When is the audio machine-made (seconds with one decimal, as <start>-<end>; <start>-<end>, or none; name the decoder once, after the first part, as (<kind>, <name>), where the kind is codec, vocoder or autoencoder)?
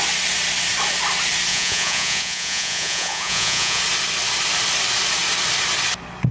1.5-3.8 (vocoder, Vocos)